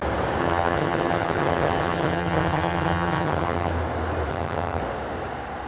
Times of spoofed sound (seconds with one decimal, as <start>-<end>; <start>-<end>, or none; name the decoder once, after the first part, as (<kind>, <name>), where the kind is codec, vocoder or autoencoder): 0.4-3.7 (vocoder, HiFi-GAN); 4.3-4.8